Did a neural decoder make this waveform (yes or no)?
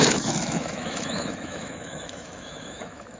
yes